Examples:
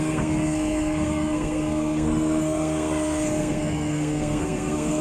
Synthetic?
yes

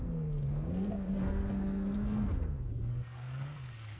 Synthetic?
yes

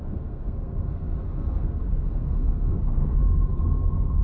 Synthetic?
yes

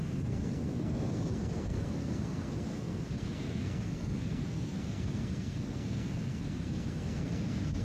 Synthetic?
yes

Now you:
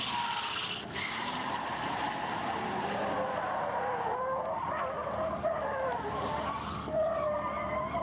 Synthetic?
no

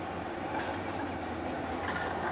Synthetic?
no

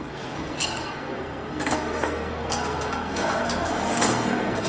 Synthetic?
yes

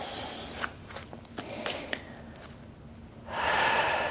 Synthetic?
no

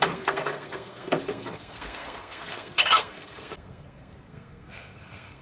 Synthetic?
yes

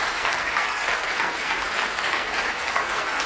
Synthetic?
yes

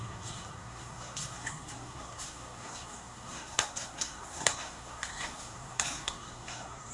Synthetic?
yes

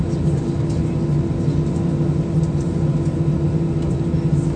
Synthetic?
no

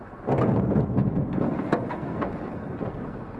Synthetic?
yes